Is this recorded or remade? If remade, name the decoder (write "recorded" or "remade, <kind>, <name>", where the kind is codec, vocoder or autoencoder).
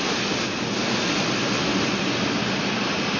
recorded